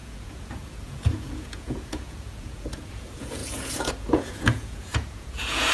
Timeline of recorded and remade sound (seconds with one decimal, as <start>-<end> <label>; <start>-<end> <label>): 0.0-5.7 remade